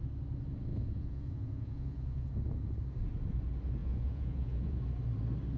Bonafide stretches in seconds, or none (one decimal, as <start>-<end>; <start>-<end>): 0.0-0.7; 2.3-3.8; 4.8-5.6